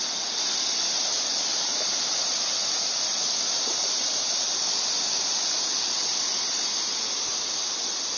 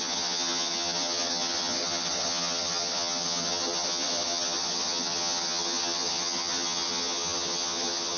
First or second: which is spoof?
second